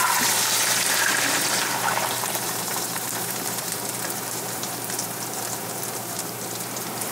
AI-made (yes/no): yes